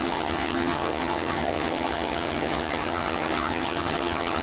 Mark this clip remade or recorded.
remade